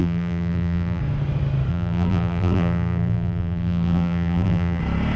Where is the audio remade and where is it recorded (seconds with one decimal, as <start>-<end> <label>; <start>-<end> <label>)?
0.0-1.0 remade; 1.0-1.7 recorded; 1.7-4.8 remade; 4.8-5.2 recorded